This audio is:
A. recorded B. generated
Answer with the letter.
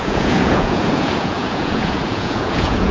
B